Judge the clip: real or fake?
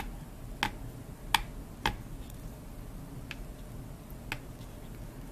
real